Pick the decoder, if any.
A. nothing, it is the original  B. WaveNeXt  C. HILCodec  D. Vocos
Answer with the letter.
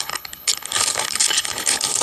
C